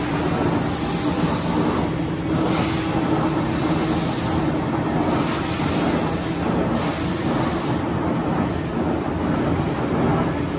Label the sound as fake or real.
real